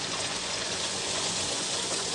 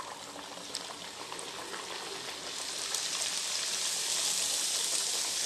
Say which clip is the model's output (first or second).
first